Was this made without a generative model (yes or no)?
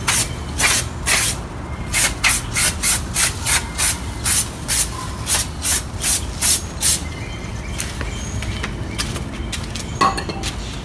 yes